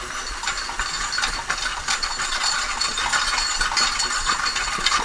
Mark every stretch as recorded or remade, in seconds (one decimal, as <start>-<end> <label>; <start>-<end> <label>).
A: 0.0-1.7 recorded; 1.7-2.9 remade; 2.9-5.0 recorded